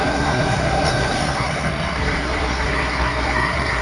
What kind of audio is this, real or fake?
fake